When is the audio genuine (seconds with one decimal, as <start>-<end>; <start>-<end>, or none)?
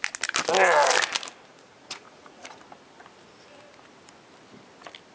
0.0-1.5; 2.6-5.1